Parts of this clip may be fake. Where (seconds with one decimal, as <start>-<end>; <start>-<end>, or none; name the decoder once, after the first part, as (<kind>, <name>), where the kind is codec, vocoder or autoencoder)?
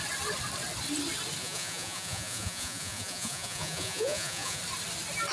1.4-4.6 (vocoder, Vocos)